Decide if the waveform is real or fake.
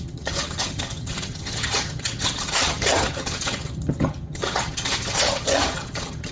fake